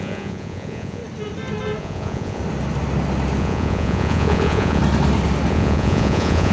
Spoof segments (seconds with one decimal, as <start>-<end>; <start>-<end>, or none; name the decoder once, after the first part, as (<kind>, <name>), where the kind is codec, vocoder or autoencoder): 0.0-1.0 (vocoder, Vocos); 1.8-2.4; 3.4-4.8; 5.5-6.5

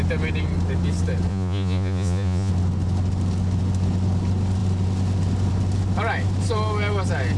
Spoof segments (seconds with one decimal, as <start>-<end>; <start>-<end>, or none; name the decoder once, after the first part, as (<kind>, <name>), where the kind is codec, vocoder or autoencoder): 1.3-2.5 (vocoder, Vocos)